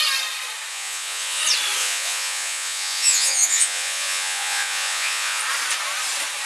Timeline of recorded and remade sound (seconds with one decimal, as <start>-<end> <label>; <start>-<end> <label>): 0.0-0.7 recorded; 0.7-1.4 remade; 1.4-1.8 recorded; 1.8-5.4 remade; 5.4-6.5 recorded